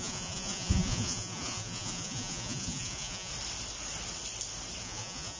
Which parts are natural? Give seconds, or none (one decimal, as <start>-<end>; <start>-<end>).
3.3-4.8